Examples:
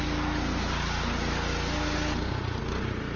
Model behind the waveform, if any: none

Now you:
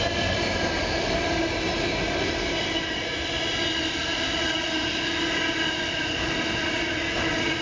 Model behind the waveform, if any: none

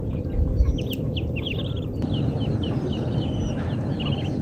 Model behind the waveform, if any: none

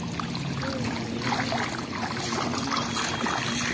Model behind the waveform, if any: none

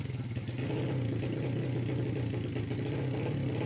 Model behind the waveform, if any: none